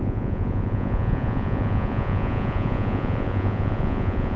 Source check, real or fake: fake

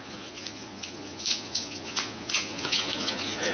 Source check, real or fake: fake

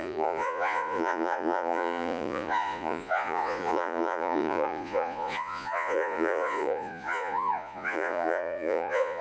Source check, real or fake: fake